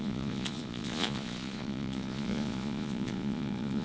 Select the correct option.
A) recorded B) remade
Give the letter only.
B